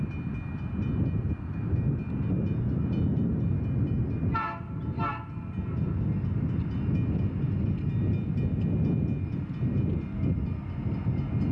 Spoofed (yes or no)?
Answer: no